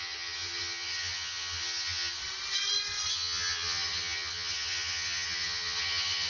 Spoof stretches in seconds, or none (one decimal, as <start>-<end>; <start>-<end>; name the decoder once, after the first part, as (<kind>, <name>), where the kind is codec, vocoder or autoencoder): 0.0-2.2 (vocoder, HiFi-GAN); 3.1-6.3